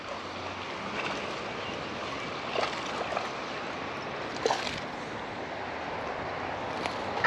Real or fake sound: real